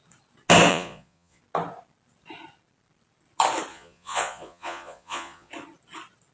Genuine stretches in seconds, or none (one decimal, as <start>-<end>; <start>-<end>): 0.0-0.7; 1.4-3.7; 5.5-6.3